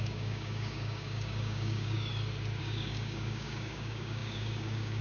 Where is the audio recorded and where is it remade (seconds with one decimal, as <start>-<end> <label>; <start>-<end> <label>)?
0.0-2.1 remade; 2.1-2.6 recorded; 2.6-5.0 remade